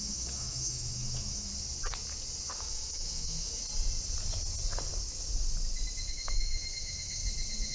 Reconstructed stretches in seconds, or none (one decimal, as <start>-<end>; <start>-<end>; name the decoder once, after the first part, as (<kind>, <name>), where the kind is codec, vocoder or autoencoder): 0.0-1.5 (autoencoder, DAC-VAE); 2.6-3.6; 6.1-7.2